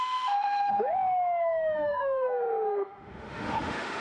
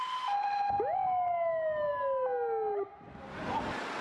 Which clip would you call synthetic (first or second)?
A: first